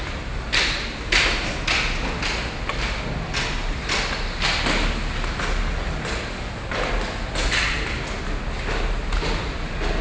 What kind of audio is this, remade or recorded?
recorded